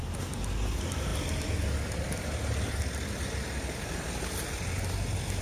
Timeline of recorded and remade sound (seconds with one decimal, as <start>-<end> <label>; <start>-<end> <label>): 0.0-5.4 recorded